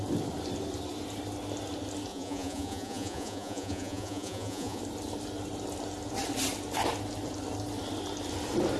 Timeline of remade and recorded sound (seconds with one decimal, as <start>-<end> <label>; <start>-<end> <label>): 0.0-2.1 recorded; 2.1-4.8 remade; 4.8-8.8 recorded